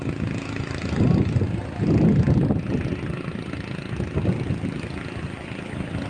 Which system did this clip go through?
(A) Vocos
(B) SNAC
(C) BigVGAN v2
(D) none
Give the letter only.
D